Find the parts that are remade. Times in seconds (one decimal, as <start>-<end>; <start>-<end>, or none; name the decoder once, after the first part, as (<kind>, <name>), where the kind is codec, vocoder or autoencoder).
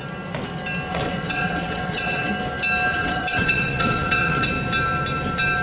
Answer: 0.9-2.3 (vocoder, WaveNeXt); 2.9-4.5